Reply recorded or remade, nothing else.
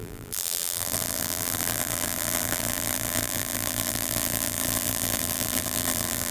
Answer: remade